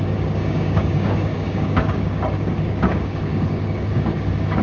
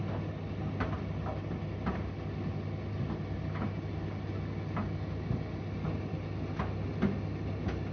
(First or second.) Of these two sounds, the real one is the second